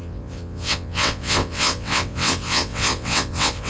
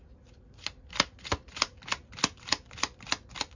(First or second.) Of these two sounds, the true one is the second